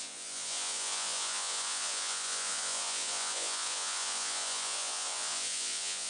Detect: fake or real fake